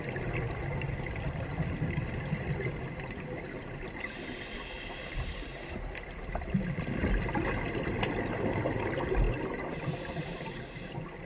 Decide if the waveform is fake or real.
real